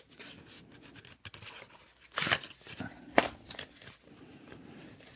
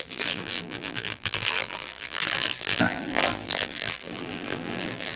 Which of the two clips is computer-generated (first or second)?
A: second